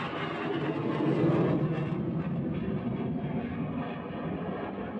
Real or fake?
real